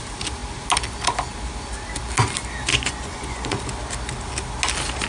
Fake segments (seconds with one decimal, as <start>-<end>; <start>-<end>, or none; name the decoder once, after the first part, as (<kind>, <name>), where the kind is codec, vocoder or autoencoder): 2.7-3.6 (vocoder, Vocos)